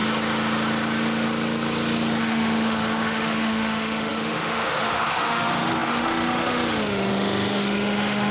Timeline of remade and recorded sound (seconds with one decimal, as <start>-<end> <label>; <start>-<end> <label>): 0.0-2.2 recorded; 2.2-8.3 remade